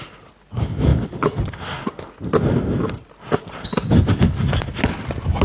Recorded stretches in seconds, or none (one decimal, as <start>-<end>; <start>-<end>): 0.0-5.4